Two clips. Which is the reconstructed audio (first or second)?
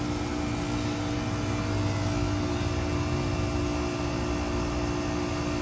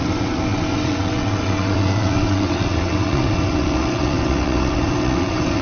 second